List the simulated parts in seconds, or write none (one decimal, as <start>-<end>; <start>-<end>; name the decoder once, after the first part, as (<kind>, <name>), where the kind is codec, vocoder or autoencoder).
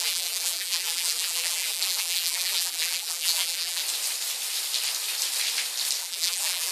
0.0-3.8 (vocoder, BigVGAN v2); 6.0-6.7